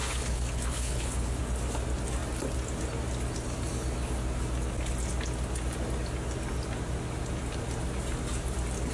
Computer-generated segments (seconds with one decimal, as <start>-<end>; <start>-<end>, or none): 0.0-1.4